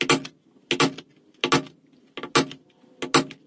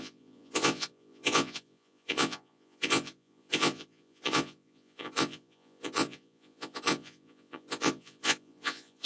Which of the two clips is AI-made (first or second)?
second